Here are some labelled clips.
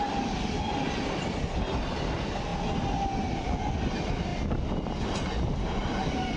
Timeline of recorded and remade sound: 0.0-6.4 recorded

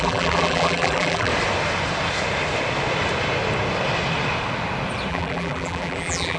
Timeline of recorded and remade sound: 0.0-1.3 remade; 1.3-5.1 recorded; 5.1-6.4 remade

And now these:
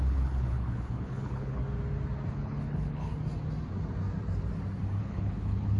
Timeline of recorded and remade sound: 0.0-1.6 remade; 1.6-2.3 recorded; 2.3-3.1 remade; 3.1-5.0 recorded; 5.0-5.8 remade

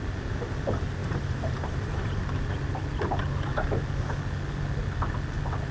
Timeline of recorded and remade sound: 0.0-1.0 recorded; 1.0-2.2 remade; 2.2-5.7 recorded